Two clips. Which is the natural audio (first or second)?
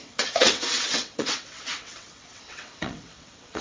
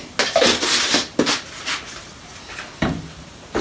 second